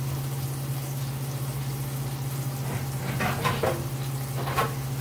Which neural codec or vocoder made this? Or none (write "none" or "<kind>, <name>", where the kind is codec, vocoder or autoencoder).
vocoder, BigVGAN v2